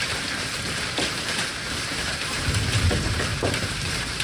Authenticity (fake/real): fake